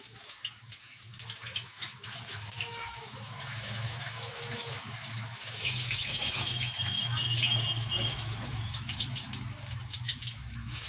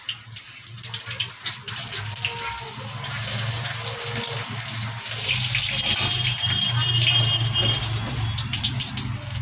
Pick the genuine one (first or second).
second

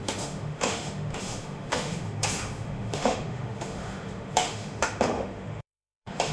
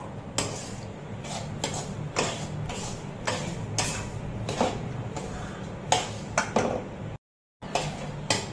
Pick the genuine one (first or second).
second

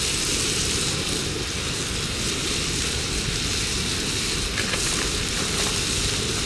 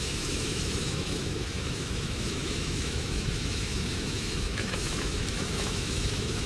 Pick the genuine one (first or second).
first